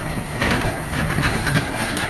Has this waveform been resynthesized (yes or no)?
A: yes